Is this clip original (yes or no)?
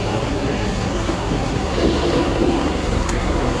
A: no